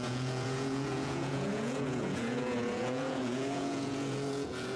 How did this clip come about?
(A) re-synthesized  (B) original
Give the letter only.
A